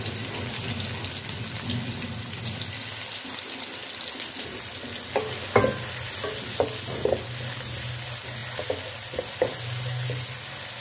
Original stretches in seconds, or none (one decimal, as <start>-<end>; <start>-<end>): 0.0-10.8